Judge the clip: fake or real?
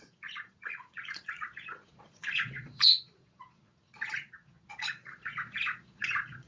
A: fake